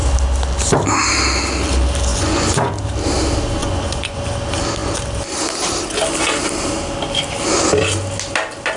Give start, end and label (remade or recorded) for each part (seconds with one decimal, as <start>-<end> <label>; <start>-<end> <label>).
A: 0.0-2.1 recorded; 2.1-2.7 remade; 2.7-3.6 recorded; 3.6-4.2 remade; 4.2-8.8 recorded